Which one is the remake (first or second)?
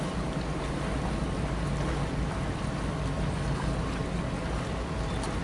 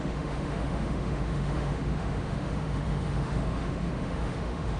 second